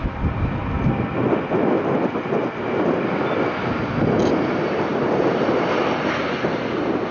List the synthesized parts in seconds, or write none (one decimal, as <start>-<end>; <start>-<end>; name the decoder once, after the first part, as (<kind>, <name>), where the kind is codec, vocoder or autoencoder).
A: none